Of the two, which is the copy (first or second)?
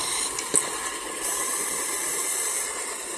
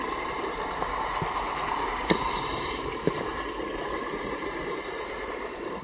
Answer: second